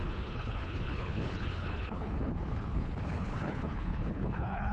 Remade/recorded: remade